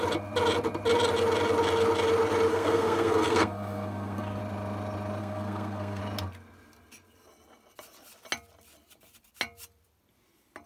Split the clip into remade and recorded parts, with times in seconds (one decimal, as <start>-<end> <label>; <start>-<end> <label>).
0.0-2.5 recorded; 2.5-4.4 remade; 4.4-5.2 recorded; 5.2-6.0 remade; 6.0-10.7 recorded